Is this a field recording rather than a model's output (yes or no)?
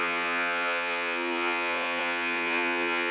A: no